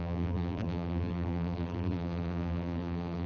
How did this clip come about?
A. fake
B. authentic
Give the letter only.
A